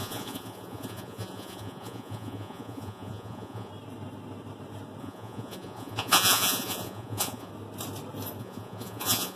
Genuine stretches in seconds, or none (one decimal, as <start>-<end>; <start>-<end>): 3.7-5.0; 7.5-8.4